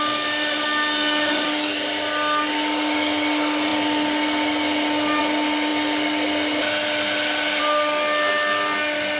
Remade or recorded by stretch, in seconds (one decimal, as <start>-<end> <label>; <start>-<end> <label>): 0.0-9.2 recorded